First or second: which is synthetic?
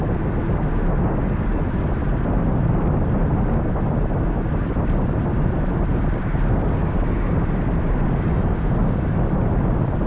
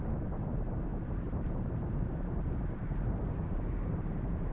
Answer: second